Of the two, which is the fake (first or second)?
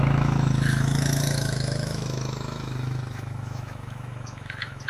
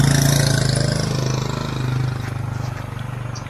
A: first